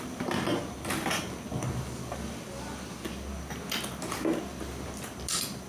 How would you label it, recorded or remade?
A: recorded